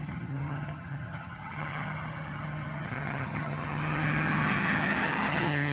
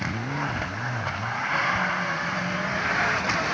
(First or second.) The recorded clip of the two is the second